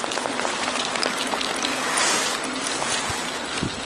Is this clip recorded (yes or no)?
yes